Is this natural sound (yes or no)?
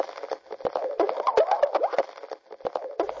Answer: yes